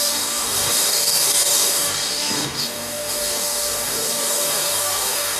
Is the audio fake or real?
fake